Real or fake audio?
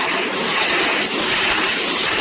fake